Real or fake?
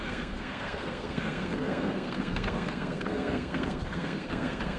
fake